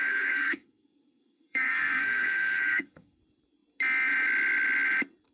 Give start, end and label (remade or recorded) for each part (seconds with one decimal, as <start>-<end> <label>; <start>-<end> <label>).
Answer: 0.0-3.2 remade; 3.2-5.3 recorded